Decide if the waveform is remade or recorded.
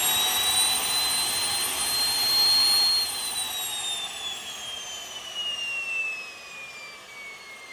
recorded